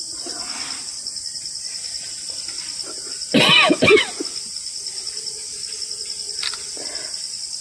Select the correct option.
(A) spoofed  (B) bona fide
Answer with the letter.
B